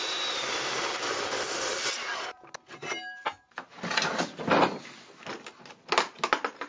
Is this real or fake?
real